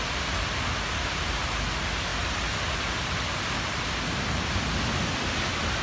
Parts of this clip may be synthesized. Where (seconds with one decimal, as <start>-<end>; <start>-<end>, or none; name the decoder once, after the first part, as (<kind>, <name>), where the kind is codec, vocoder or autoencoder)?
none